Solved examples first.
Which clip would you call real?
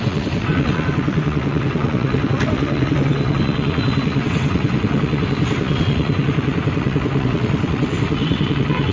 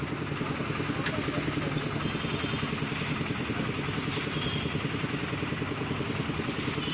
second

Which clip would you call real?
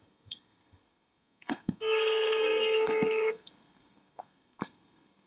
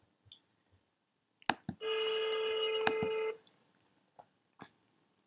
second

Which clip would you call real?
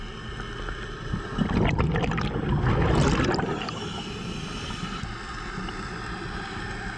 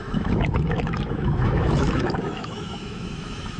first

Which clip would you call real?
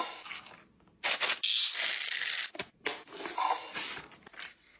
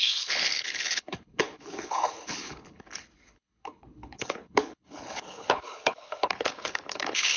first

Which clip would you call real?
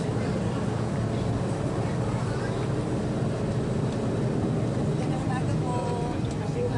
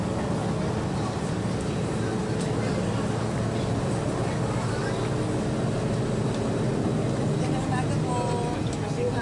second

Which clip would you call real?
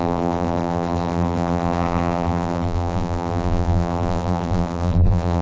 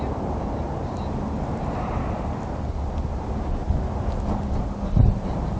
second